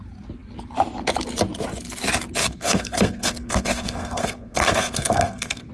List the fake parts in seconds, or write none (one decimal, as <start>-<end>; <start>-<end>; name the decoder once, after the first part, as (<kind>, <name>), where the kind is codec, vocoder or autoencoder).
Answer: 2.4-5.7 (codec, SNAC)